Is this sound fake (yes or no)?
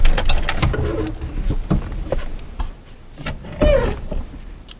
no